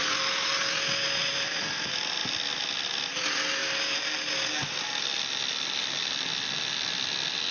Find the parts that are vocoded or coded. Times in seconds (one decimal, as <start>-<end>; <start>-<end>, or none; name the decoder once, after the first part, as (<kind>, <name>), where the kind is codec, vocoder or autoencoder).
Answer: none